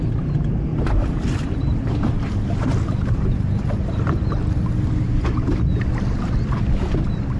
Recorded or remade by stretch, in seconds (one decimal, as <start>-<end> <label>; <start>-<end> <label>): 0.0-0.7 recorded; 0.7-4.7 remade; 4.7-7.4 recorded